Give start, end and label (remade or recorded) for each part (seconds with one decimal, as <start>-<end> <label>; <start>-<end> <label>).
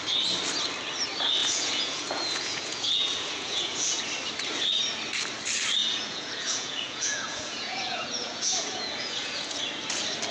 0.0-1.4 recorded; 1.4-4.0 remade; 4.0-5.8 recorded; 5.8-9.6 remade; 9.6-10.3 recorded